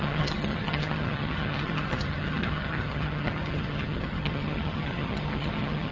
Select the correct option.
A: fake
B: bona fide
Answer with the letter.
A